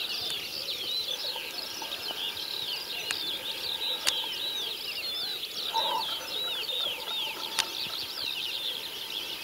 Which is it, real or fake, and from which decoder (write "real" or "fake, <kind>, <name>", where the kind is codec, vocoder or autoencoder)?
real